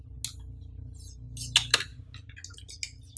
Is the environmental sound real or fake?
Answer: real